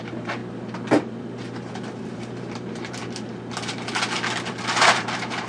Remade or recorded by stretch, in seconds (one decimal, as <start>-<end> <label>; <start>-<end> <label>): 0.0-0.4 remade; 0.4-2.0 recorded; 2.0-3.0 remade; 3.0-4.6 recorded; 4.6-5.5 remade

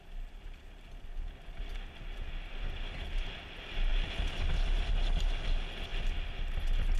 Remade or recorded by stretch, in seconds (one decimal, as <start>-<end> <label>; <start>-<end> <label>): 0.0-7.0 recorded

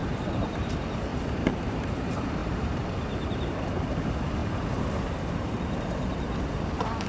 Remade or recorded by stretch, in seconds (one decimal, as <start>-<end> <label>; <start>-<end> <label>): 0.0-1.1 remade; 1.1-1.6 recorded; 1.6-7.1 remade

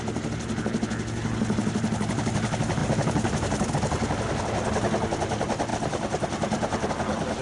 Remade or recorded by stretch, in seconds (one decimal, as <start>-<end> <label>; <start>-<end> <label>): 0.0-2.8 recorded; 2.8-3.7 remade; 3.7-7.4 recorded

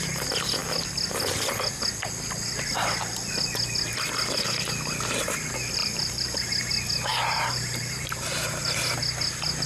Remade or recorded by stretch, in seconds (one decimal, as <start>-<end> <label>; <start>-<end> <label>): 0.0-5.8 recorded; 5.8-6.4 remade; 6.4-9.7 recorded